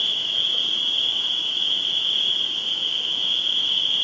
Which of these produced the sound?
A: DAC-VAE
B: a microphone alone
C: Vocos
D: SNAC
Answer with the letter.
A